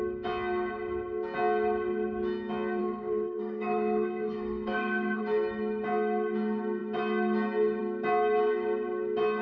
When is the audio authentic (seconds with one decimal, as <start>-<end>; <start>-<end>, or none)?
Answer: 0.0-2.8; 5.2-9.4